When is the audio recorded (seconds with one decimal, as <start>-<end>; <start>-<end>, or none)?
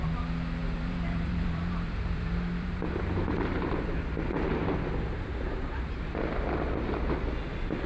0.0-0.6; 3.7-5.1; 5.9-7.9